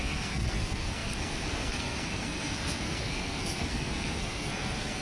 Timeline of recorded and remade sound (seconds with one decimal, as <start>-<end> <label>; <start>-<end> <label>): 0.0-5.0 remade